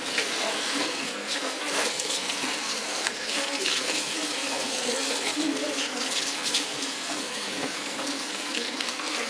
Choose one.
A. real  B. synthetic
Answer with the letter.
B